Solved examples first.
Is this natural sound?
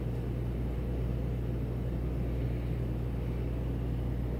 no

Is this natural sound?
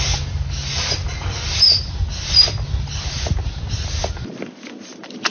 yes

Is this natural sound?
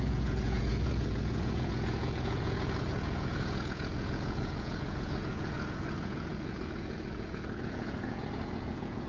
no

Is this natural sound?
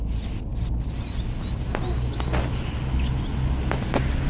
yes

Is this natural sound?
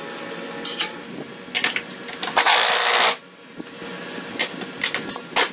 yes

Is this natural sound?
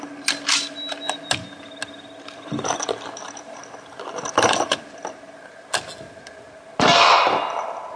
yes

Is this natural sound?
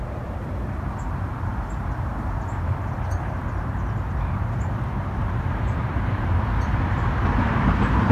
no